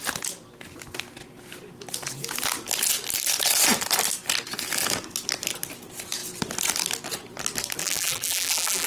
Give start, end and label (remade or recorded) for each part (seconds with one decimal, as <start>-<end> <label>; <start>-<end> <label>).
0.0-7.8 recorded; 7.8-8.9 remade